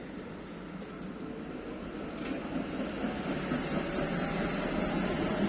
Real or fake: real